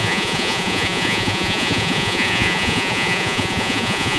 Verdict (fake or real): fake